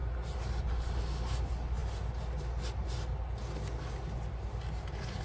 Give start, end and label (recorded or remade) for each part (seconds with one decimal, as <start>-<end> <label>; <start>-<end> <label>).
0.0-5.2 recorded